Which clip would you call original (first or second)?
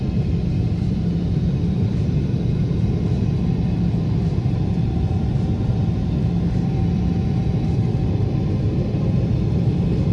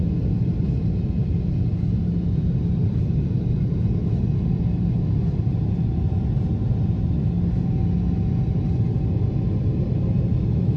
second